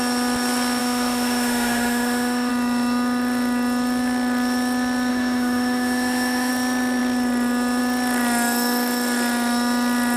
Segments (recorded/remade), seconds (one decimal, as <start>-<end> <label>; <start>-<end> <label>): 0.0-0.8 recorded; 0.8-2.5 remade; 2.5-5.1 recorded; 5.1-6.5 remade; 6.5-10.2 recorded